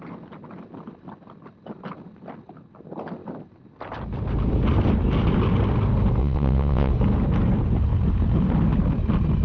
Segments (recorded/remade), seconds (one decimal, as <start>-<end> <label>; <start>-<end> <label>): 0.0-6.2 recorded; 6.2-6.9 remade; 6.9-9.4 recorded